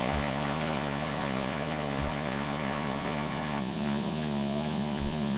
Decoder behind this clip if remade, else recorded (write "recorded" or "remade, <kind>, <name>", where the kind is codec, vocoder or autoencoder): remade, vocoder, Vocos